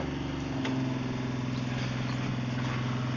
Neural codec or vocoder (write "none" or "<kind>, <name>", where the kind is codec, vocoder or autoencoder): none